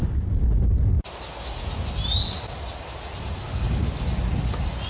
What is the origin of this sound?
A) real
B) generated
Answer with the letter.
A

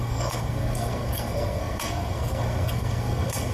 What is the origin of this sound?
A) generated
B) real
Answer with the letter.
A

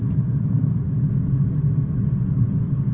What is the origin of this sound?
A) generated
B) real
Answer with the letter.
A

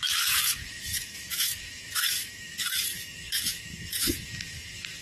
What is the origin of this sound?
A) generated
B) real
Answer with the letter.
A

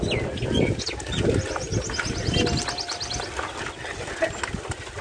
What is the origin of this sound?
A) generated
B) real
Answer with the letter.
B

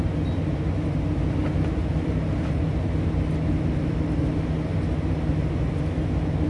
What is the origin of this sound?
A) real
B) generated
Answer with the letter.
A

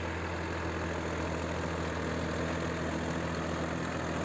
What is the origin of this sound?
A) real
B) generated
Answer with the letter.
A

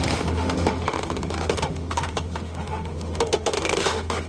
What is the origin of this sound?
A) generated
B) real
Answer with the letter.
A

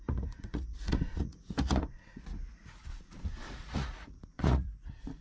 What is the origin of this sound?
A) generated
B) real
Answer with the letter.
A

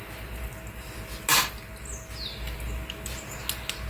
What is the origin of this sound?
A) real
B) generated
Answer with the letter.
A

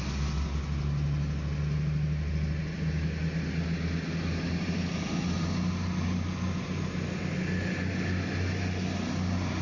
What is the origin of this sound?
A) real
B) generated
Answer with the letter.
A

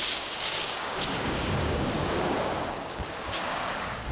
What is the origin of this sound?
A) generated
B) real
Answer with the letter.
A